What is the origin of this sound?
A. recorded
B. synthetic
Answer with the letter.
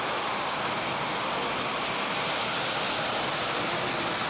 A